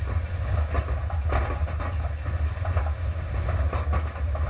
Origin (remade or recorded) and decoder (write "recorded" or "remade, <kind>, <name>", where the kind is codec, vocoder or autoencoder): recorded